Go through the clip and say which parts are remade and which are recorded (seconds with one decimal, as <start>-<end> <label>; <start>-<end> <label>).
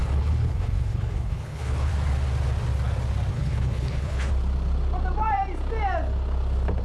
0.0-1.9 remade; 1.9-3.3 recorded; 3.3-4.3 remade; 4.3-6.8 recorded